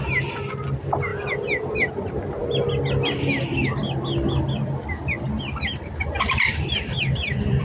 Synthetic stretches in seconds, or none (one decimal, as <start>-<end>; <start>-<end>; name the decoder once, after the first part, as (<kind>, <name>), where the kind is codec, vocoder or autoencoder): 3.8-7.6 (vocoder, BigVGAN v2)

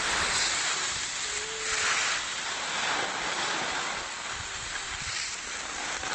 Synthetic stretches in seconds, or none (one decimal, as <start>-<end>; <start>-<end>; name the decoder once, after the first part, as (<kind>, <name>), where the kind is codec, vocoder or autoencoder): none

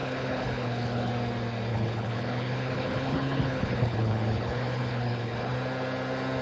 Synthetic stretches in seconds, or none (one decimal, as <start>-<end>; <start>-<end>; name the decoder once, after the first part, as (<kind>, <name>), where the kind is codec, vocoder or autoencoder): 0.0-1.1 (codec, HILCodec); 1.7-5.5

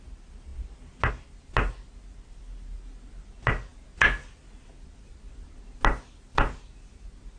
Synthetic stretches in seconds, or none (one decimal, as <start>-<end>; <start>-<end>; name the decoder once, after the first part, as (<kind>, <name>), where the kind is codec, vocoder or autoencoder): none